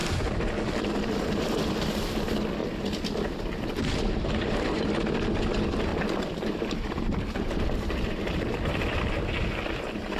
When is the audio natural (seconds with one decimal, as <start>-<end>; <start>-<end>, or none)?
0.0-2.6; 3.3-3.8; 4.9-5.9; 9.5-10.2